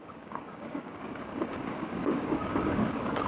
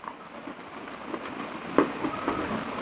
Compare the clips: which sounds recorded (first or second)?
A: second